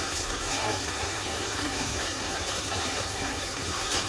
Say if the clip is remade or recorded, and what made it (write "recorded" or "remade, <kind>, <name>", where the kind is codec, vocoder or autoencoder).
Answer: remade, codec, SNAC